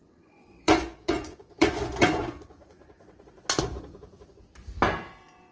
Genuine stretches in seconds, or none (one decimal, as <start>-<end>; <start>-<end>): 3.3-5.5